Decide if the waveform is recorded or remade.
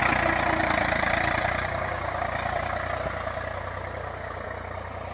remade